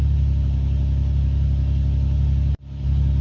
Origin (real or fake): real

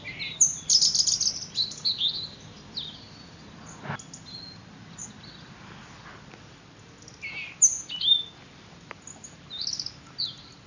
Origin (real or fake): real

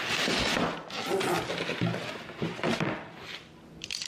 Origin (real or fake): real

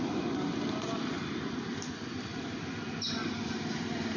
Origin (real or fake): real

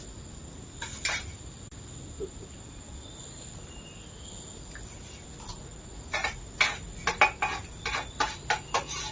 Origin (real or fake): real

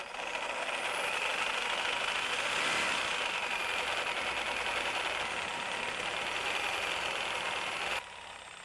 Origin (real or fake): real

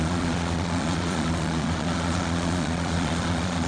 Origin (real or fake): fake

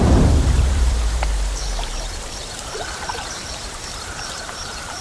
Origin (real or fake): fake